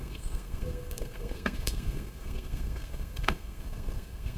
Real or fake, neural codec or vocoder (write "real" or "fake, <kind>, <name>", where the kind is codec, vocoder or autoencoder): fake, codec, SNAC